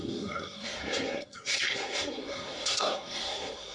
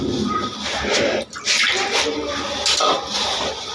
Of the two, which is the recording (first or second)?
second